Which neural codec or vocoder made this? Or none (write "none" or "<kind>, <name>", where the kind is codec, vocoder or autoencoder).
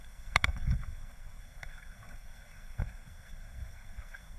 codec, SNAC